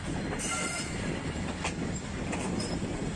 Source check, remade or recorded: recorded